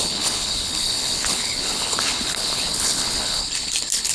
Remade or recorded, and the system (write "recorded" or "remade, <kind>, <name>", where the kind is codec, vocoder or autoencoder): remade, codec, HILCodec